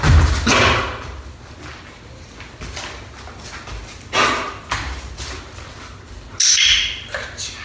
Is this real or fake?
real